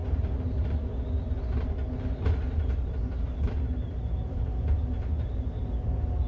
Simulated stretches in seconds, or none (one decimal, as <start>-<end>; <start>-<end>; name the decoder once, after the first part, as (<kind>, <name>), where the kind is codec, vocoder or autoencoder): none